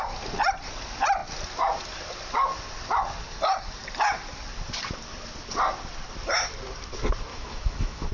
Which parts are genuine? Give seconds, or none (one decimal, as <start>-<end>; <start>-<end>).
0.0-7.3